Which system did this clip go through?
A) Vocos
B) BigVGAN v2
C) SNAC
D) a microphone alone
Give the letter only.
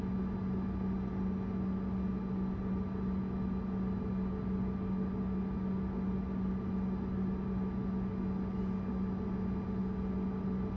D